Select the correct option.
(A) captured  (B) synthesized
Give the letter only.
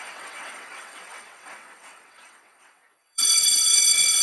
B